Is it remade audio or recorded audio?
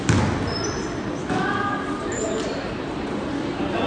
recorded